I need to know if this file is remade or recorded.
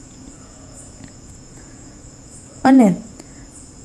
remade